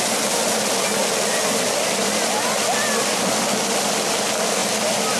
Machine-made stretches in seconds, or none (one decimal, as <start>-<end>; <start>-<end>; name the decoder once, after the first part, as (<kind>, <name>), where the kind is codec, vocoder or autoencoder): none